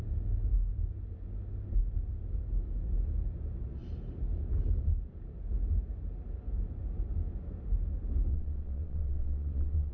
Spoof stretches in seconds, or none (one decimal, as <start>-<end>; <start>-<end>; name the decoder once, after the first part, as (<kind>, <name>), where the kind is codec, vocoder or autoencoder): 8.3-9.9 (vocoder, WaveNeXt)